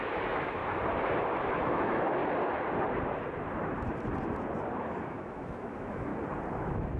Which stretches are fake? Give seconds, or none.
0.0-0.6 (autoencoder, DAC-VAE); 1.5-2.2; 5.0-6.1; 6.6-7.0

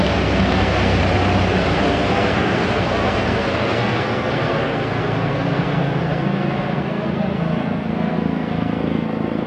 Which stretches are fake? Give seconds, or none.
0.0-1.0 (codec, SNAC); 1.5-9.5

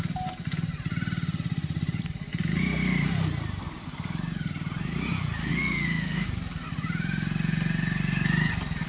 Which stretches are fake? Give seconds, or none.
5.4-6.3 (autoencoder, DAC-VAE)

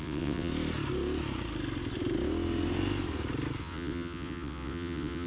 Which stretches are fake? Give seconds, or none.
0.0-0.5 (vocoder, WaveNeXt); 3.6-5.3